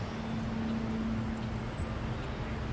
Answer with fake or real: real